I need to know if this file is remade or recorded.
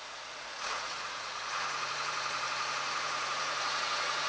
remade